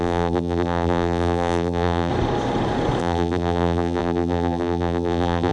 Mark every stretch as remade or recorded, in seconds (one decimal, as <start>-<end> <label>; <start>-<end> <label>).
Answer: 0.0-2.1 remade; 2.1-3.0 recorded; 3.0-5.5 remade